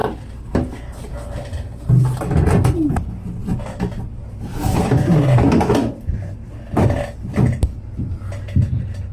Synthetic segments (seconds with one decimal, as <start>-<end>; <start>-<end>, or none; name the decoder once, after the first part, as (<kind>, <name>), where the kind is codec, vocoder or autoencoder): none